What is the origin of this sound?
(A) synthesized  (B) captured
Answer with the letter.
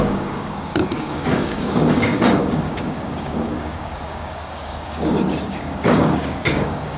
A